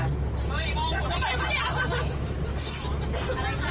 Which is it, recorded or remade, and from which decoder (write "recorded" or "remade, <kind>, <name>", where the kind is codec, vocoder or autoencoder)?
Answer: recorded